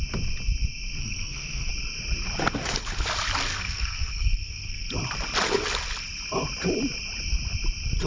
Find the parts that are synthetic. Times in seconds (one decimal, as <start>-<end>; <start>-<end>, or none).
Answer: 1.0-1.7; 3.5-4.9